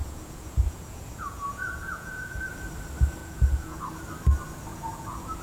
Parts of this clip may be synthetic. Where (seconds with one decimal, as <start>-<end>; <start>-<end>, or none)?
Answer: 0.0-2.5; 3.2-3.9; 4.7-5.4